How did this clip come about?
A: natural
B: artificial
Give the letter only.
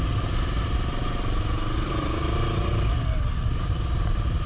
B